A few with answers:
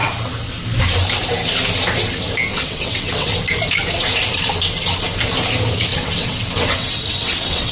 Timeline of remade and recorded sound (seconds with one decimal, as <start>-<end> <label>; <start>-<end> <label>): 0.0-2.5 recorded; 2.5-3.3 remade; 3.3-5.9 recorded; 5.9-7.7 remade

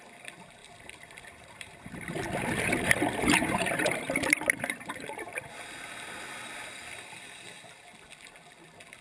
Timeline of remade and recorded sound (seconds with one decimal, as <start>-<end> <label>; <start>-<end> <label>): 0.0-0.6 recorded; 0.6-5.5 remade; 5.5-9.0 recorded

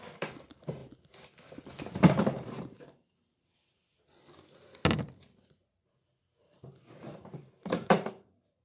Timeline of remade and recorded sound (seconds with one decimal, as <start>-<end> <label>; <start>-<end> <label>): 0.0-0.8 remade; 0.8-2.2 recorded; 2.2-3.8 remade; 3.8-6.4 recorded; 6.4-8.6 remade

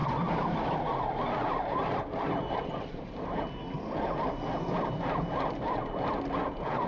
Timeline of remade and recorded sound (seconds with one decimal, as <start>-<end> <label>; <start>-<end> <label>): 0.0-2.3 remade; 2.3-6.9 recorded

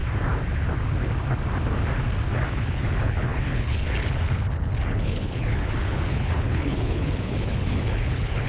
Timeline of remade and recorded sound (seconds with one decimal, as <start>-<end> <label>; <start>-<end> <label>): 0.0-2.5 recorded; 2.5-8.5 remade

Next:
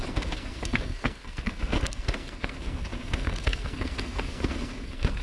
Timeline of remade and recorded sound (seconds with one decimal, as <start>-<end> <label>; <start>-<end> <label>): 0.0-5.2 remade